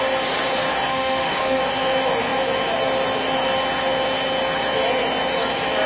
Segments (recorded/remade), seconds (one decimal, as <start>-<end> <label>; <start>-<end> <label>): 0.0-0.9 recorded; 0.9-1.6 remade; 1.6-5.9 recorded